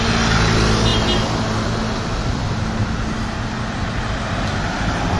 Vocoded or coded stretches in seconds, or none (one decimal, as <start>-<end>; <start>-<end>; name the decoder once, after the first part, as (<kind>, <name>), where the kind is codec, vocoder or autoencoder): none